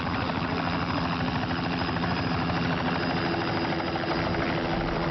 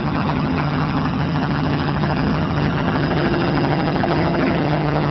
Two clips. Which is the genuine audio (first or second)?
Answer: first